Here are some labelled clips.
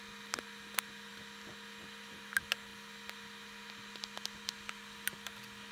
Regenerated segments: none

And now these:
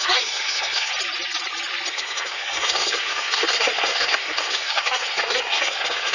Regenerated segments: 0.0-0.9 (codec, SNAC); 1.9-6.1